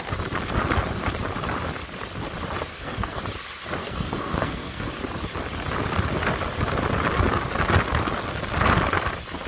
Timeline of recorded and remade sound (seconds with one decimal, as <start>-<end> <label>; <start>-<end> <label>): 0.0-2.7 recorded; 2.7-3.2 remade; 3.2-3.8 recorded; 3.8-4.9 remade; 4.9-9.5 recorded